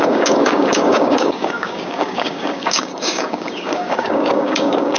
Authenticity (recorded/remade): remade